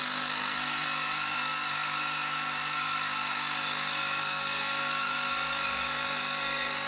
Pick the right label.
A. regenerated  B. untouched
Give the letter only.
A